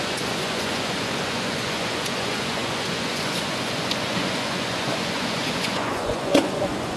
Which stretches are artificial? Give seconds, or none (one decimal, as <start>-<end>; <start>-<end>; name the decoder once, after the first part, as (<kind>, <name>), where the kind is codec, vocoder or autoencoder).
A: 0.0-7.0 (vocoder, Vocos)